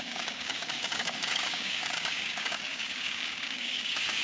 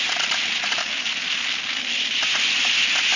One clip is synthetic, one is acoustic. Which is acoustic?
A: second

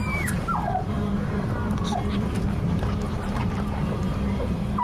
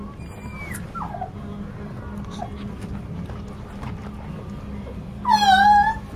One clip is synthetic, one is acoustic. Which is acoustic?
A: second